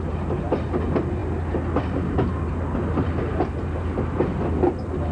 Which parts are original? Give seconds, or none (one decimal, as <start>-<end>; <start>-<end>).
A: 0.0-5.1